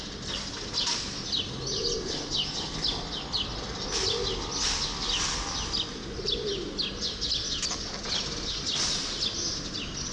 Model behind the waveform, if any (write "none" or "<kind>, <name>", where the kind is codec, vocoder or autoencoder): none